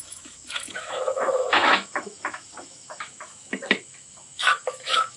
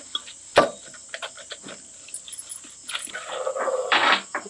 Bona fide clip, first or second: second